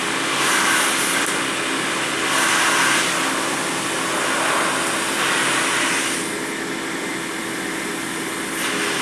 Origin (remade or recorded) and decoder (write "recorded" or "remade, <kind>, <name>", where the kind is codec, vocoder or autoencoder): recorded